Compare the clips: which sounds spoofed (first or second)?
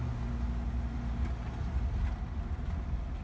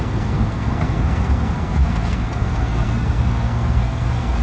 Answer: second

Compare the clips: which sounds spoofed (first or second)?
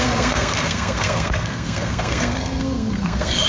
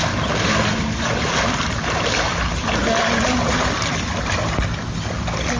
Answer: first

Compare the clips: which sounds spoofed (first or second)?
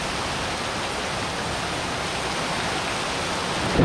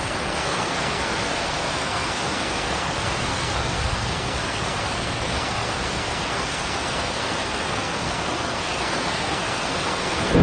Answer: second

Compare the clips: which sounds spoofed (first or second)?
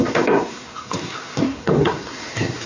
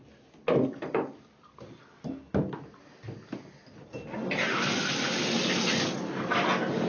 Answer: first